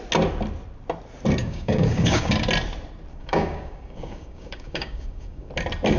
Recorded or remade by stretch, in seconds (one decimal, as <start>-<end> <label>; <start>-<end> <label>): 0.0-1.4 recorded; 1.4-2.3 remade; 2.3-3.1 recorded; 3.1-5.5 remade; 5.5-6.0 recorded